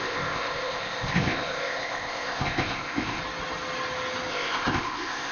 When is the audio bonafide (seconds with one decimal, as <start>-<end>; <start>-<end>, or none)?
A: 3.2-4.3